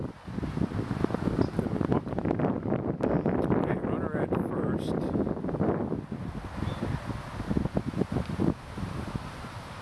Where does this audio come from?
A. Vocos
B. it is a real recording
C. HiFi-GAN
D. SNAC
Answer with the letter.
B